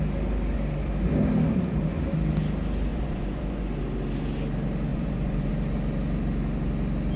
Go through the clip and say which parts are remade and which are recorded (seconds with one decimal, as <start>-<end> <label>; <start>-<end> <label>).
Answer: 0.0-2.9 recorded; 2.9-3.8 remade; 3.8-4.9 recorded; 4.9-5.5 remade; 5.5-7.2 recorded